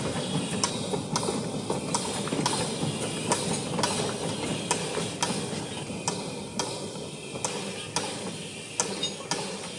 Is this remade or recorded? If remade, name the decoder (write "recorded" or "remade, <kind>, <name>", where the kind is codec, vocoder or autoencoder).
recorded